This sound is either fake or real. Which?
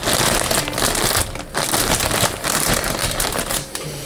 real